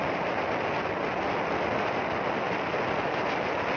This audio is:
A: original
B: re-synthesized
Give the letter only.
A